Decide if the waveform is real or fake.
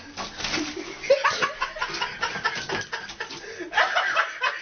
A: real